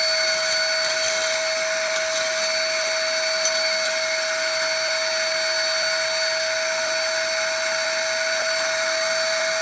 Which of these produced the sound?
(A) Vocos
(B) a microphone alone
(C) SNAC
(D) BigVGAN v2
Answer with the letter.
B